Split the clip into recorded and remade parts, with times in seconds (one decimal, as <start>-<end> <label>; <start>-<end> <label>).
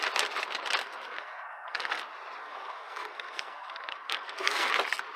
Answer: 0.0-0.8 recorded; 0.8-2.0 remade; 2.0-2.4 recorded; 2.4-4.7 remade; 4.7-5.2 recorded